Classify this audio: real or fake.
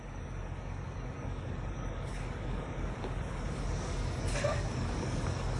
fake